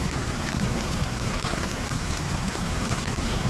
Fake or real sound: fake